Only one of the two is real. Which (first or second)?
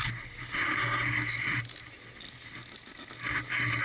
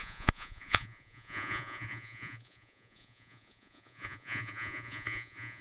first